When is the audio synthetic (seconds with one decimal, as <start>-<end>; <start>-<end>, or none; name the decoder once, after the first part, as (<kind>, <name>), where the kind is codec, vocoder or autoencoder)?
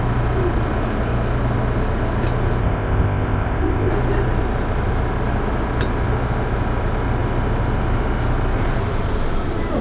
2.6-3.9 (codec, ZipCodec)